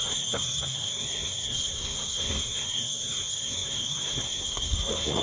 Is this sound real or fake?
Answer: fake